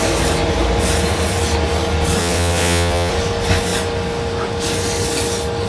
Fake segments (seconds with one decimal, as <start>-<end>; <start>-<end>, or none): 2.2-3.1